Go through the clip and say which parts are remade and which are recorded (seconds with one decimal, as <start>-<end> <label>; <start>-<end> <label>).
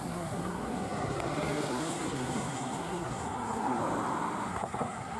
0.0-3.8 remade; 3.8-4.5 recorded; 4.5-5.2 remade